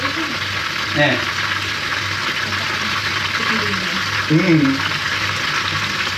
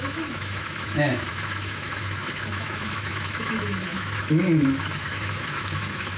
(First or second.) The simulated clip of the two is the second